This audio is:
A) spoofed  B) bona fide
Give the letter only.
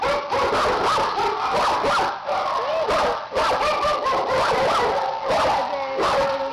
B